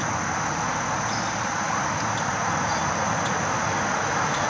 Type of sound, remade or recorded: recorded